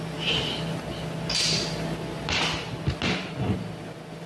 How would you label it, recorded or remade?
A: recorded